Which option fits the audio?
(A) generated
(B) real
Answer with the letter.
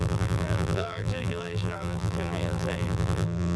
A